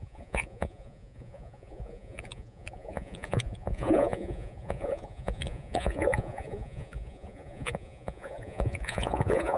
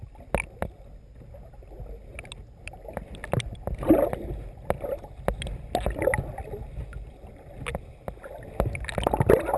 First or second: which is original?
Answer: second